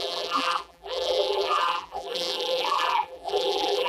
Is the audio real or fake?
fake